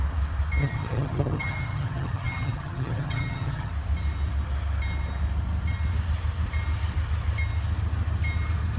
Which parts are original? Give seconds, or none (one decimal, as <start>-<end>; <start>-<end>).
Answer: 0.0-0.6; 3.7-8.8